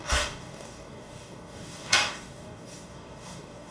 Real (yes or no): no